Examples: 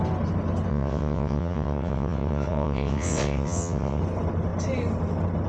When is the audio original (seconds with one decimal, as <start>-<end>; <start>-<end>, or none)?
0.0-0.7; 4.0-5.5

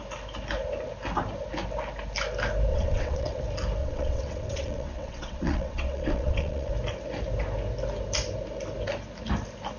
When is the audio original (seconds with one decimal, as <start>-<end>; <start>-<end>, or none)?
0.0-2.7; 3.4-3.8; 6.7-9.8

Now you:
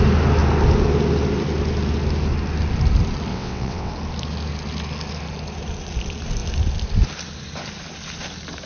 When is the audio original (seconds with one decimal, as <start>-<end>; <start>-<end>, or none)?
0.0-3.3; 3.9-8.7

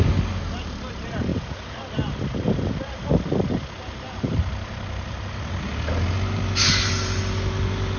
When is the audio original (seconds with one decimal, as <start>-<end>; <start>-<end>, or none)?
0.0-8.0

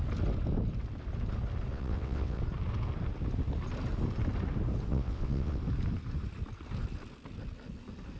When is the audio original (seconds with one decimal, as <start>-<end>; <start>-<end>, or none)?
0.0-1.7; 2.4-4.9; 5.6-8.2

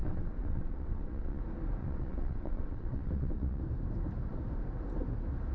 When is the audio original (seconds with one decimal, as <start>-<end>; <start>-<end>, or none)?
1.4-1.8; 3.6-5.5

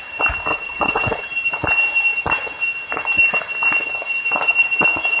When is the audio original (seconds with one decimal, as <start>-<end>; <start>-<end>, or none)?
0.0-0.5; 1.2-5.2

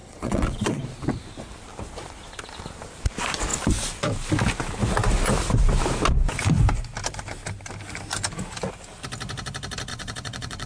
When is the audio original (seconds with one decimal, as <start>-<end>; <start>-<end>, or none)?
0.8-9.9